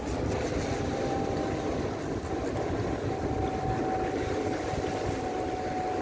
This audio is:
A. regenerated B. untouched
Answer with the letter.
B